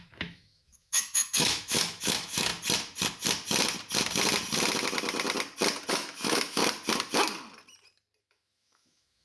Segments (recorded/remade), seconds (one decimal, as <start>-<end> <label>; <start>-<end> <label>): 0.0-2.5 remade; 2.5-5.9 recorded; 5.9-6.6 remade; 6.6-8.2 recorded; 8.2-9.2 remade